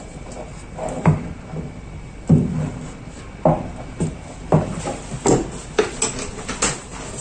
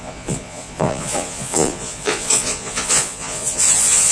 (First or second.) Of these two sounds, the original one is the first